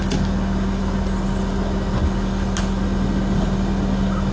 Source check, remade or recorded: recorded